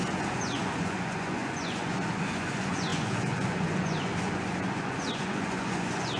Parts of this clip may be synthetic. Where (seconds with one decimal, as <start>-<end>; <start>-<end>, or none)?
0.0-6.2

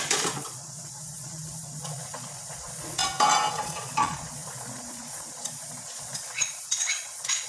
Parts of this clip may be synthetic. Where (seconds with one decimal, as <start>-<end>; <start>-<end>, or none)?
0.0-3.0; 3.6-7.5

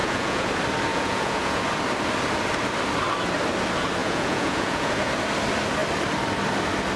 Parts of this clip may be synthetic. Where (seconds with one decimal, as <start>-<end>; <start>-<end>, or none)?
0.0-0.5; 0.9-1.6; 4.0-5.1

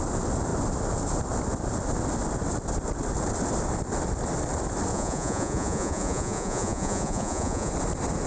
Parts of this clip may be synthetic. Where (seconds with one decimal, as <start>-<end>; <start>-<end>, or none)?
4.9-7.7

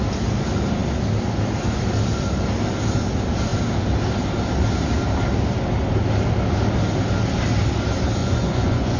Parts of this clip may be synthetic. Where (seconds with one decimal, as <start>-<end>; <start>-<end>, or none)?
8.2-9.0

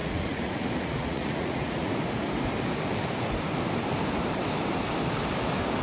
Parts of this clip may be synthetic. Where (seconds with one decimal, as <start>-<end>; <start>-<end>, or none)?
0.0-1.9